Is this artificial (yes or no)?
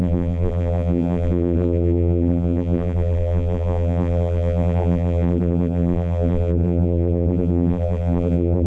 yes